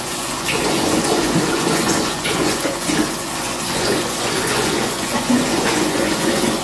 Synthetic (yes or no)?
yes